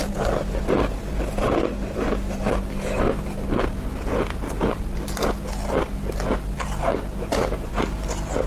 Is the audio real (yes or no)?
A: yes